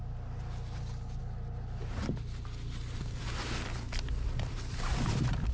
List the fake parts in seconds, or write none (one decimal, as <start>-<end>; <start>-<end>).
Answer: none